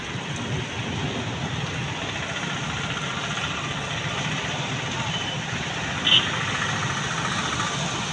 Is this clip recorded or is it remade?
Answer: recorded